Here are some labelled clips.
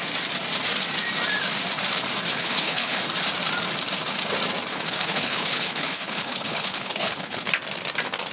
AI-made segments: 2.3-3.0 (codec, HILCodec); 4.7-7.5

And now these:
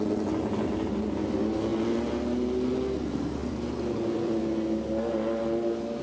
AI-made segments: 3.4-4.4 (vocoder, BigVGAN v2)

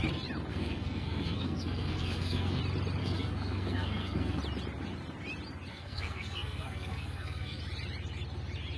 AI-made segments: 0.5-2.6 (codec, SNAC); 3.0-4.4; 5.7-7.6